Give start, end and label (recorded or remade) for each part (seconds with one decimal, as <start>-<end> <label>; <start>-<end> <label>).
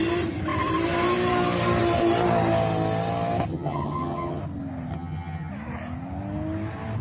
0.0-3.5 recorded; 3.5-4.4 remade; 4.4-4.9 recorded; 4.9-5.5 remade; 5.5-7.0 recorded